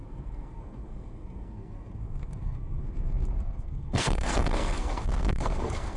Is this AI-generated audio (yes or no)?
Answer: yes